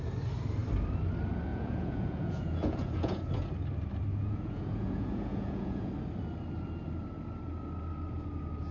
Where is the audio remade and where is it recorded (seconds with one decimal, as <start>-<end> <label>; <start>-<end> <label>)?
0.0-1.5 recorded; 1.5-3.5 remade; 3.5-4.1 recorded; 4.1-5.9 remade; 5.9-8.7 recorded